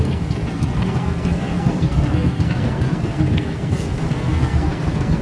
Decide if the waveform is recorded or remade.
remade